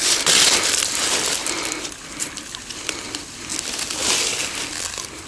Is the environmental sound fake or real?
real